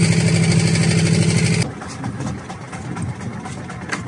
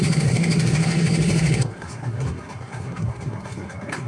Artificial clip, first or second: second